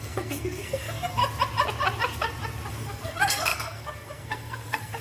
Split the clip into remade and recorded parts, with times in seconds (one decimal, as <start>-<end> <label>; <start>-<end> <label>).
0.0-1.2 remade; 1.2-2.7 recorded; 2.7-5.0 remade

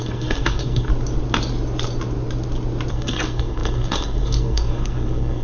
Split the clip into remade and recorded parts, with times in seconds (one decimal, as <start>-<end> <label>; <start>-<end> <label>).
0.0-0.9 remade; 0.9-2.9 recorded; 2.9-5.4 remade

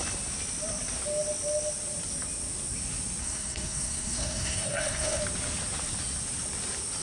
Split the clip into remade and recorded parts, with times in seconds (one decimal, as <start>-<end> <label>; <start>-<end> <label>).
0.0-3.2 recorded; 3.2-5.2 remade; 5.2-7.0 recorded

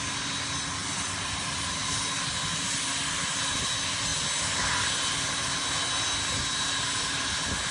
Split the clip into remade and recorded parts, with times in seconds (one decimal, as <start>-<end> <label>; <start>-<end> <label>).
0.0-7.7 recorded

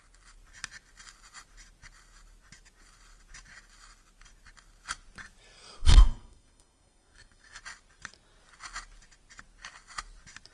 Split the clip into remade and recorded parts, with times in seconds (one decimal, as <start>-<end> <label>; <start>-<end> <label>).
0.0-5.8 recorded; 5.8-7.6 remade; 7.6-10.5 recorded

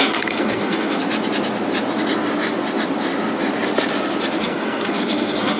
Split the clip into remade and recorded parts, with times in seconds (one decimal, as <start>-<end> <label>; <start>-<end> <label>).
0.0-1.0 remade; 1.0-4.4 recorded; 4.4-5.6 remade

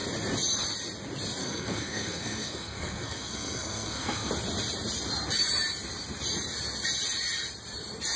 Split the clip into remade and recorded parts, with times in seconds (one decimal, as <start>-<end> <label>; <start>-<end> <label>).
0.0-1.4 recorded; 1.4-4.3 remade; 4.3-8.2 recorded